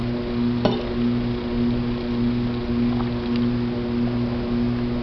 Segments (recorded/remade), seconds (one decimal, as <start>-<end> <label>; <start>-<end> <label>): 0.0-5.0 recorded

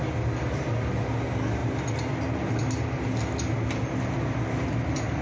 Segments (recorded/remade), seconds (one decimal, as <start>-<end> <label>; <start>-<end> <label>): 0.0-5.2 recorded